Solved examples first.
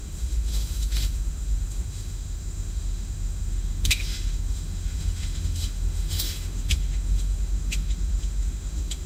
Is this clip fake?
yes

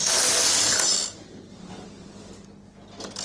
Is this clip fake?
no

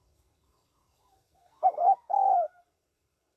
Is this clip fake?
yes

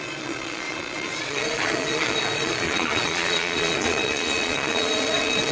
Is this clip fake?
yes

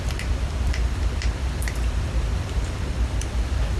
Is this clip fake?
yes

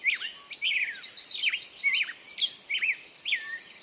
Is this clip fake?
no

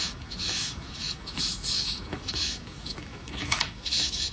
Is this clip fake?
yes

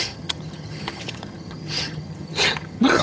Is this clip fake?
yes